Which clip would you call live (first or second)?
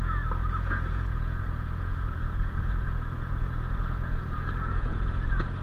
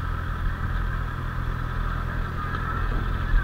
second